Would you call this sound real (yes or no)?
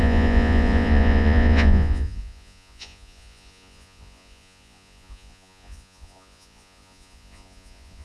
no